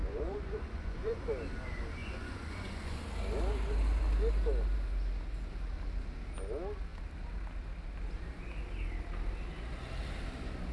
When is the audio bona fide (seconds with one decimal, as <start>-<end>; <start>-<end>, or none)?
1.2-2.0; 3.0-10.7